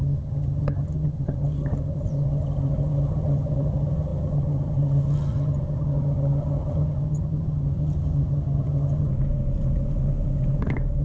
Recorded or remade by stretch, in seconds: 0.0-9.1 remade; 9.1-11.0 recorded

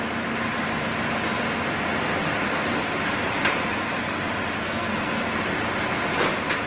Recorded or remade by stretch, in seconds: 0.0-4.6 recorded; 4.6-5.2 remade; 5.2-6.7 recorded

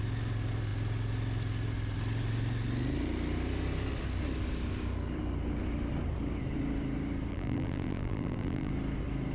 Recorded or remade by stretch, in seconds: 0.0-7.3 recorded; 7.3-8.7 remade; 8.7-9.3 recorded

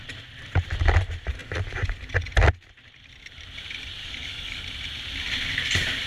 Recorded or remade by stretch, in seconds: 0.0-4.0 recorded; 4.0-4.6 remade; 4.6-6.1 recorded

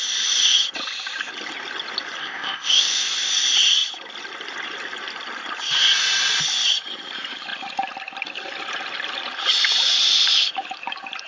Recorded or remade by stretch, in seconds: 0.0-2.2 recorded; 2.2-3.3 remade; 3.3-11.3 recorded

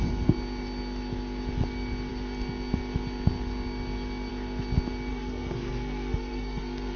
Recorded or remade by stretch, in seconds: 0.0-5.1 recorded; 5.1-7.0 remade